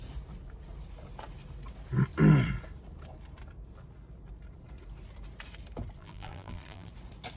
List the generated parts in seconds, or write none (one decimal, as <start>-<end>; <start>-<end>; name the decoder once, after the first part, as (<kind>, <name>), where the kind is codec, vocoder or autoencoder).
6.0-6.9 (vocoder, BigVGAN v2)